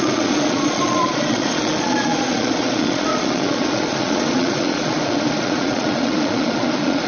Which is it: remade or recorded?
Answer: remade